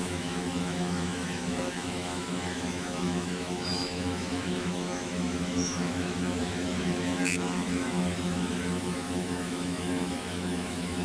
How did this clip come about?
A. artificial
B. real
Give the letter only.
A